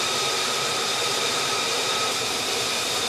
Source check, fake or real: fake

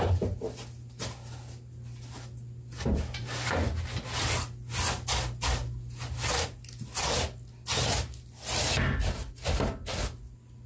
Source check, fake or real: real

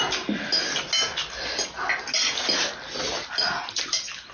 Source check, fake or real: real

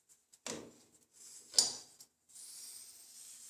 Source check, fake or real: real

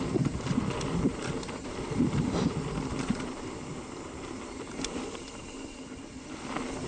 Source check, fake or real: fake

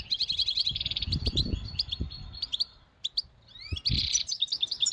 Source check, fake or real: fake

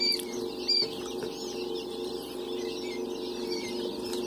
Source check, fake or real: real